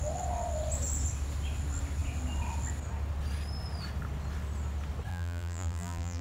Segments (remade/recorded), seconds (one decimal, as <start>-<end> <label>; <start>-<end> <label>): 0.0-5.1 recorded; 5.1-6.2 remade